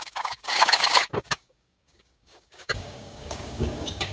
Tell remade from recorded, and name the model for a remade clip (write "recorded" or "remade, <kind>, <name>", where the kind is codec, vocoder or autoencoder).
remade, codec, DAC